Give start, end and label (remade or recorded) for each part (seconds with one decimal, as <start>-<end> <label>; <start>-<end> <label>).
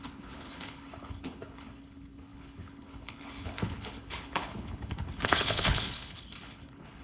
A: 0.0-7.0 remade